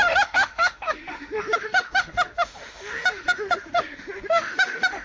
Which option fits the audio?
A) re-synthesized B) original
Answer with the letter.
A